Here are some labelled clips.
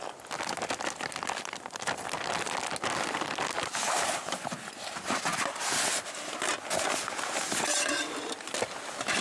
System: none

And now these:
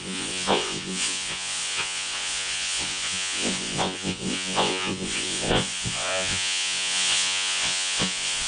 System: vocoder, Vocos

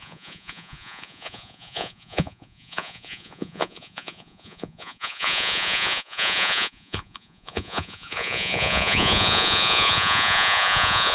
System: vocoder, Vocos